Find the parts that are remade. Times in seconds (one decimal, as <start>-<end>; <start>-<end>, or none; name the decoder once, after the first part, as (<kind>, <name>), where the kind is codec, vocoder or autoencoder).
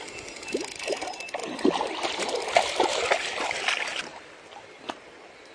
1.4-2.2 (vocoder, BigVGAN v2)